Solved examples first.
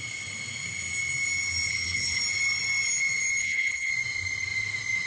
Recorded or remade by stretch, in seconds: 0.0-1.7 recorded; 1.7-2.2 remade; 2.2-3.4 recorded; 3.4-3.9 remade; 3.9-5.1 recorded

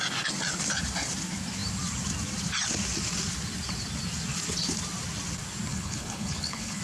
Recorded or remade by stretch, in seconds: 0.0-5.7 recorded; 5.7-6.8 remade

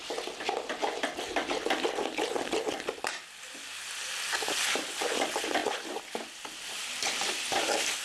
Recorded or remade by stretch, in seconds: 0.0-8.0 recorded

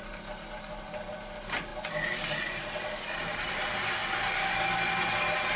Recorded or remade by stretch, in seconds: 0.0-5.6 recorded

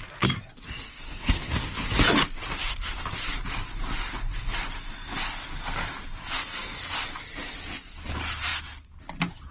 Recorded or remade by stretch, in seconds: 0.0-0.9 recorded; 0.9-1.5 remade; 1.5-9.5 recorded